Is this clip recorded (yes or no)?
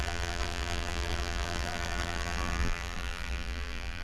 no